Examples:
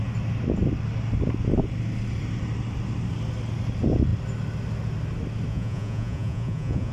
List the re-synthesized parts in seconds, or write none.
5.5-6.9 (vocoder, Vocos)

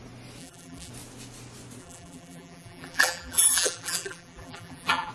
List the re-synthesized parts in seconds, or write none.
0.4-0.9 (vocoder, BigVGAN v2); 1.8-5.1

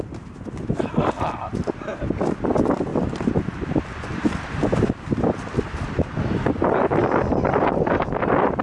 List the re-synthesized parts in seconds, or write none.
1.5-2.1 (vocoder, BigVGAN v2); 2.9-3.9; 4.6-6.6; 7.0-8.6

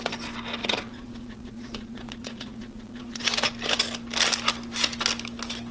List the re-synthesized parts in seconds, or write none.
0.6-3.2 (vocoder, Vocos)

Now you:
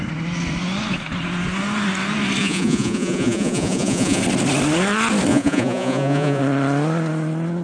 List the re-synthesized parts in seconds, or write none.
2.4-4.2 (vocoder, Vocos); 5.3-6.4

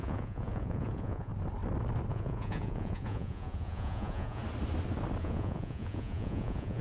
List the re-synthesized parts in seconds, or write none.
0.0-1.3 (vocoder, Vocos); 2.1-4.4; 5.2-6.8

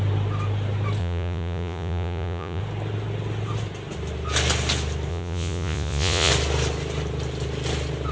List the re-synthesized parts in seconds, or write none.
1.0-2.6 (vocoder, Vocos); 5.1-6.3